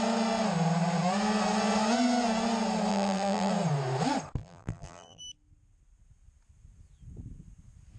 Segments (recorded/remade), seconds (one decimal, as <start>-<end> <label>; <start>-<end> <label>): 0.0-2.9 recorded; 2.9-3.5 remade; 3.5-4.4 recorded; 4.4-5.2 remade; 5.2-8.0 recorded